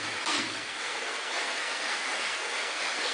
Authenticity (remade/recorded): remade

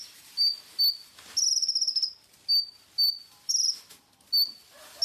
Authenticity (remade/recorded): recorded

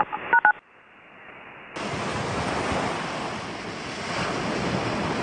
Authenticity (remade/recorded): recorded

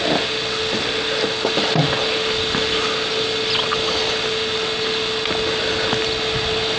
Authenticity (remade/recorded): recorded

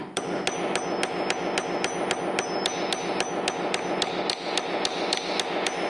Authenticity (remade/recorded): recorded